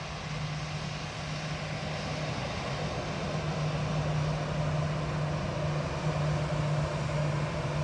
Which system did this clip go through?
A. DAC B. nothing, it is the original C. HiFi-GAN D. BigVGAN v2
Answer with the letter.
B